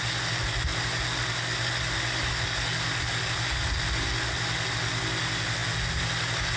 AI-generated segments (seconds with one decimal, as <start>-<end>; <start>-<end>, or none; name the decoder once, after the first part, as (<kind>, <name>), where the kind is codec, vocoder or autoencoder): none